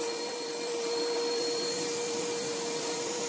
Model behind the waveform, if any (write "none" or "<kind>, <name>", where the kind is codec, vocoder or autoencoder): vocoder, BigVGAN v2